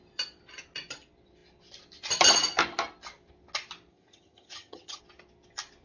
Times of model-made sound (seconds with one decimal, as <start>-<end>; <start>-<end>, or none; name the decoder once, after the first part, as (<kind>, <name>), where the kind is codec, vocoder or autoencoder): 3.9-5.0 (vocoder, HiFi-GAN)